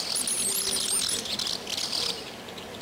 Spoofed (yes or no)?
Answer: no